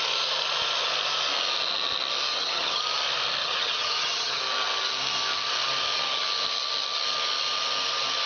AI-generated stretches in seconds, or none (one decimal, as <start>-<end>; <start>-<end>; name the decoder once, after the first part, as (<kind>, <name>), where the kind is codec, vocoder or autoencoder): 2.3-2.8 (vocoder, HiFi-GAN); 3.4-4.4